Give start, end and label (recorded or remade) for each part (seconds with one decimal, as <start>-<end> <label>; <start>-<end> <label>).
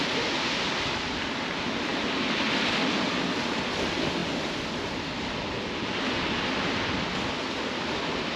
0.0-8.4 recorded